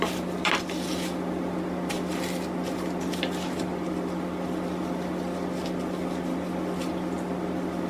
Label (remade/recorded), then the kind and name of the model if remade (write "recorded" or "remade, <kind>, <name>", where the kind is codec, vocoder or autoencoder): recorded